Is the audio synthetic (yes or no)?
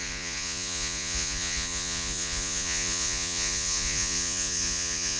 yes